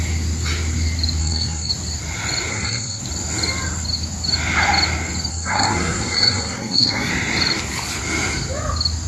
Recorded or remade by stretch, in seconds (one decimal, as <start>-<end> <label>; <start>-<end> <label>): 0.0-1.2 recorded; 1.2-1.7 remade; 1.7-2.5 recorded; 2.5-3.0 remade; 3.0-5.3 recorded; 5.3-7.1 remade; 7.1-9.1 recorded